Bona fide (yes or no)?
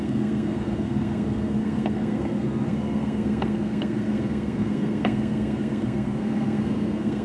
no